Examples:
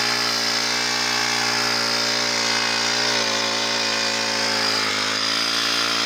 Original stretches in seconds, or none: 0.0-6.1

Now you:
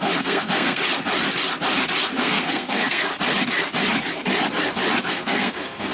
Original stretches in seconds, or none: 0.8-2.2; 3.1-5.1

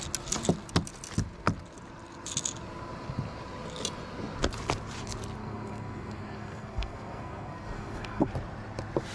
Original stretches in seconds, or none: 0.0-5.4; 8.3-9.1

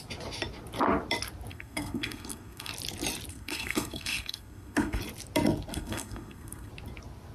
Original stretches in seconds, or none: 0.0-1.5; 2.7-3.3; 5.0-5.7; 6.7-7.3

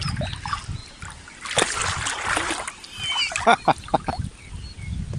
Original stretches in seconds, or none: 0.0-5.2